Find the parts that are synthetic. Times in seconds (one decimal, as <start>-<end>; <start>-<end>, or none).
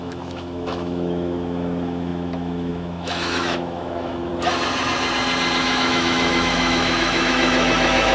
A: 0.0-4.3; 5.6-8.1